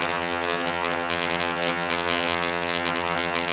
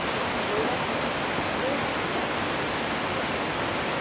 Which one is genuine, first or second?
second